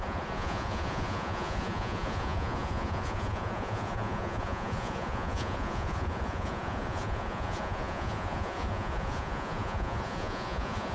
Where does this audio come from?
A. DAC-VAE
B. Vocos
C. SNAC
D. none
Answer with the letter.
B